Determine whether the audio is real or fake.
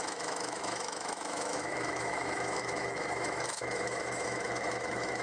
fake